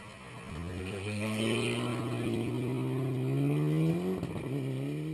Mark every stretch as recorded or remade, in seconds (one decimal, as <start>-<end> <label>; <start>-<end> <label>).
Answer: 0.0-0.8 recorded; 0.8-1.4 remade; 1.4-5.1 recorded